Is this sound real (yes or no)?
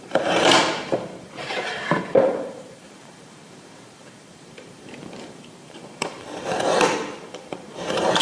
no